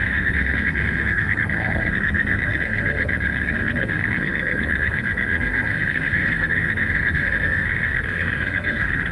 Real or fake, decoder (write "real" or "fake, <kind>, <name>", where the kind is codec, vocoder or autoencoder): fake, codec, SNAC